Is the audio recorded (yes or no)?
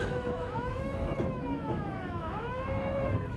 no